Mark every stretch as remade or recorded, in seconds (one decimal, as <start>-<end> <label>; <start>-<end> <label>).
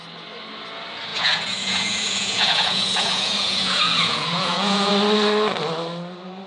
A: 0.0-1.1 recorded; 1.1-4.9 remade; 4.9-6.5 recorded